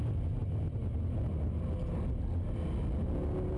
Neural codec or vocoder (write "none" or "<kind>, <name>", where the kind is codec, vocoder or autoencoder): none